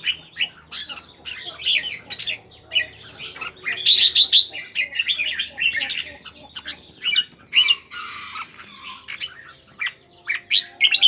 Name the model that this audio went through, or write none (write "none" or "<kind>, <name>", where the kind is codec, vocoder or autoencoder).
none